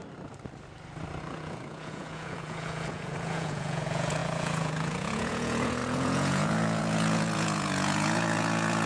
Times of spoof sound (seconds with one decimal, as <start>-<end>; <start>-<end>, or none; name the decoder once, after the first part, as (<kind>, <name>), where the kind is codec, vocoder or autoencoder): 1.2-8.9 (vocoder, Vocos)